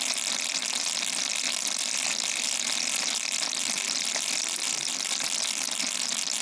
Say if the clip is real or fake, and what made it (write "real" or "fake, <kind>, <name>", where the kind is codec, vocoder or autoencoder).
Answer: real